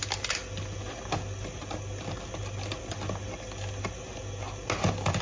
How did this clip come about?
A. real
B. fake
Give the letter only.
A